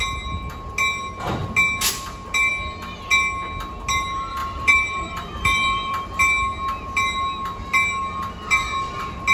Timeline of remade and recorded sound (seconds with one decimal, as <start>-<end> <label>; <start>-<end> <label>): 0.0-4.4 recorded; 4.4-6.2 remade; 6.2-9.3 recorded